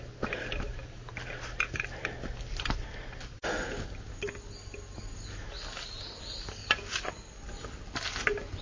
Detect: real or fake real